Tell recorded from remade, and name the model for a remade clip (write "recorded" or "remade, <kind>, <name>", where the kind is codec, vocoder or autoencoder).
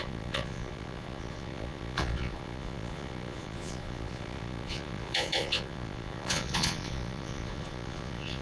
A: remade, vocoder, Vocos